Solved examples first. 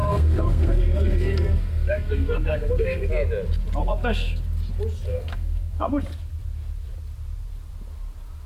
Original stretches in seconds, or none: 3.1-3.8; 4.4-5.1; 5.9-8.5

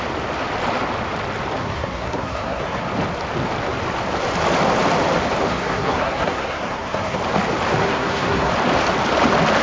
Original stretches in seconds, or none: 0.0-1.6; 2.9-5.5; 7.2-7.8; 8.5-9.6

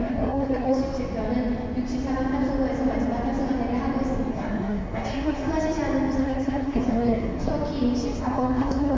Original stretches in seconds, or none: 0.8-4.3; 5.5-6.2; 7.5-8.2